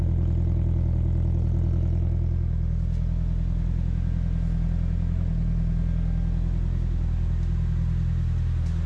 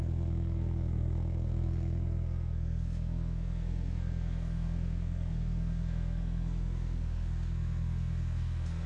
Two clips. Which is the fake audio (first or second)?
second